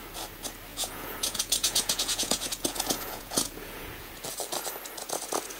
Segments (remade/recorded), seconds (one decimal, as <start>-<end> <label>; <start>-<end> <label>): 0.0-0.7 recorded; 0.7-4.1 remade; 4.1-5.6 recorded